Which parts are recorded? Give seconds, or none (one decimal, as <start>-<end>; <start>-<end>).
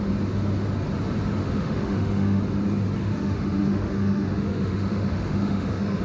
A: 0.0-1.4; 2.4-3.0